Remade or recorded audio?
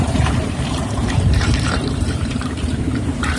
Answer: remade